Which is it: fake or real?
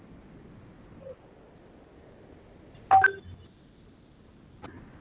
real